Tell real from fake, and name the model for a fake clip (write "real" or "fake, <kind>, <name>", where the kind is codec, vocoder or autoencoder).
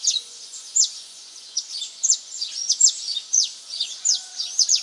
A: fake, vocoder, Vocos